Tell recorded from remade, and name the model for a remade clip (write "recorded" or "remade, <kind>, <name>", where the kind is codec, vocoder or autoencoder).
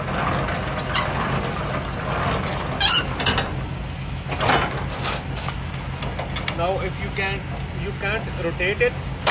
recorded